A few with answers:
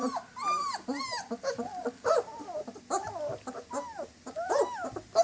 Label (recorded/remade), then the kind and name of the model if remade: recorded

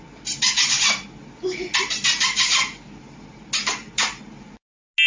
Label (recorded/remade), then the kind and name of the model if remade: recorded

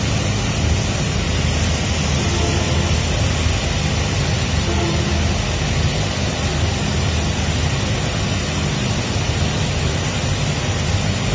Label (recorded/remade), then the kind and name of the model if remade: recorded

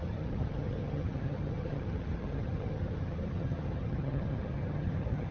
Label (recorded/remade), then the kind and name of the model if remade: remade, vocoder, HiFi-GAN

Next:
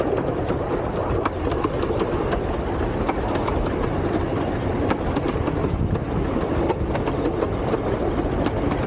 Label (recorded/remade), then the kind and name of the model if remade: recorded